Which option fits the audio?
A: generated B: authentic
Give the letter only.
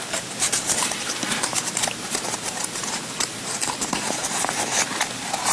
A